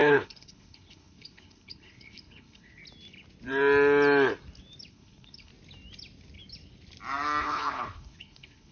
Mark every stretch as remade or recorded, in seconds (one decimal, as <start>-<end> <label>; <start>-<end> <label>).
0.0-2.8 remade; 2.8-4.9 recorded; 4.9-5.5 remade; 5.5-7.4 recorded; 7.4-8.7 remade